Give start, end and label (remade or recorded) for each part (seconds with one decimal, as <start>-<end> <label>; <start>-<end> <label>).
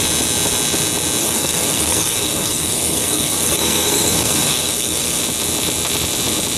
0.0-1.2 recorded; 1.2-5.2 remade; 5.2-6.6 recorded